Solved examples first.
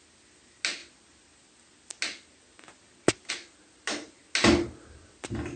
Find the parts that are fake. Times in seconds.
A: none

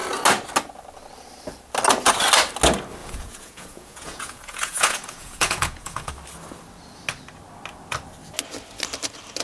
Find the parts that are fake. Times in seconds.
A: 3.0-6.1 (vocoder, Vocos)

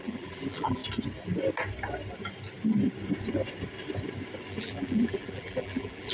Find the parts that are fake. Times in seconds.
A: 0.0-0.8 (vocoder, BigVGAN v2); 4.5-6.1

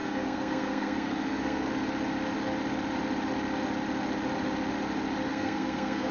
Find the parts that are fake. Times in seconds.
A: 0.0-1.7 (codec, SNAC); 5.3-6.1

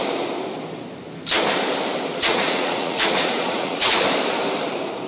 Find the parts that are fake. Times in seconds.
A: 2.1-4.0 (vocoder, Vocos)

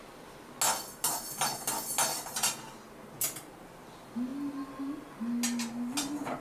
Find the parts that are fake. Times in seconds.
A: none

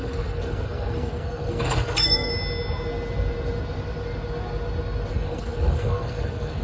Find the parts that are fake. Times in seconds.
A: 0.0-2.3 (codec, SNAC); 5.1-6.6